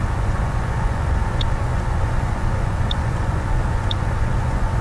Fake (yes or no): yes